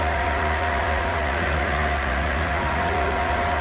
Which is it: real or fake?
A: fake